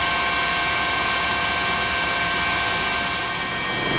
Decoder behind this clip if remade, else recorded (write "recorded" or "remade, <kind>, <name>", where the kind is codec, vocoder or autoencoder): recorded